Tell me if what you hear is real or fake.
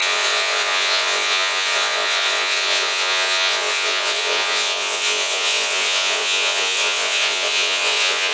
fake